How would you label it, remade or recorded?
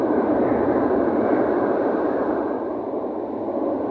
remade